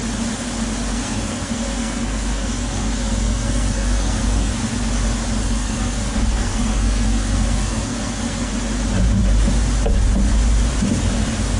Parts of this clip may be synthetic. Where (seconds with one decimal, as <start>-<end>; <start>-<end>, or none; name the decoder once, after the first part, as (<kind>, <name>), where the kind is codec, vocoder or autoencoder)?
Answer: 0.9-4.5 (codec, SNAC); 5.4-8.5